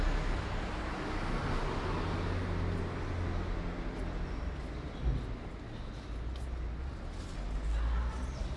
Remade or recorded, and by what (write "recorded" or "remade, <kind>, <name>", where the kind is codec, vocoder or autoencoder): recorded